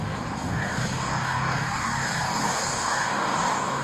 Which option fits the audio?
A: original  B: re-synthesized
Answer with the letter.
B